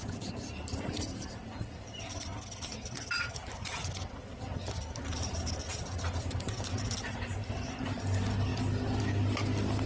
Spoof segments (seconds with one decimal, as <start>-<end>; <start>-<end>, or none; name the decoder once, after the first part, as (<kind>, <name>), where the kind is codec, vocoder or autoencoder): none